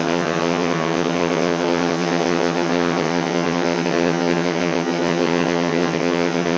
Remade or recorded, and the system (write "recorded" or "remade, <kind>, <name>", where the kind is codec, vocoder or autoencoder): remade, vocoder, HiFi-GAN